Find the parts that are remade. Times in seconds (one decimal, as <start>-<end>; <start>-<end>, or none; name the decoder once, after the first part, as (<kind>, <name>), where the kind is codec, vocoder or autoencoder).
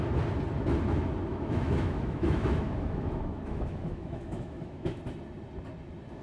1.3-5.0 (autoencoder, DAC-VAE)